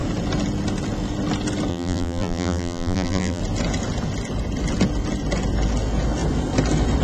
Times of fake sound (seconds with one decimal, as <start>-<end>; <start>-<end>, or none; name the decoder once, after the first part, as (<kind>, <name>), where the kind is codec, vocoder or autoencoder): 1.7-3.4 (vocoder, BigVGAN v2)